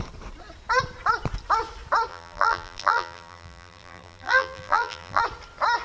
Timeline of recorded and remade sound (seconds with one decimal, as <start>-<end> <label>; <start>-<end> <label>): 0.0-2.1 recorded; 2.1-5.2 remade; 5.2-5.8 recorded